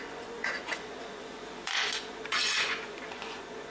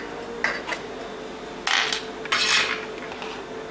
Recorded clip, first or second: second